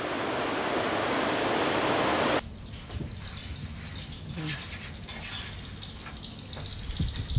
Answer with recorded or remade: recorded